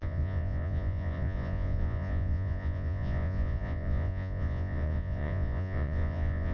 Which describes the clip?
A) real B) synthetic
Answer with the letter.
B